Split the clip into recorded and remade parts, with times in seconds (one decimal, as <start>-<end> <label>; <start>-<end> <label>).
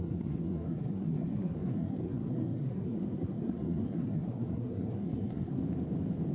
0.0-5.6 remade; 5.6-6.3 recorded